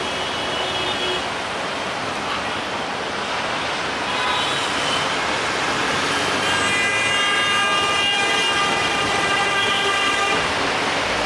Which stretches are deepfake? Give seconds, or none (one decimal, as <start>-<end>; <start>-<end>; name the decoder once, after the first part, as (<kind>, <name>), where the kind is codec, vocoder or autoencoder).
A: 4.6-5.9 (vocoder, BigVGAN v2); 7.6-9.5